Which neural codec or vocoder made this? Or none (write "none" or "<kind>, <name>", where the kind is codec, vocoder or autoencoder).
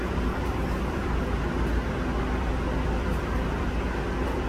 vocoder, BigVGAN v2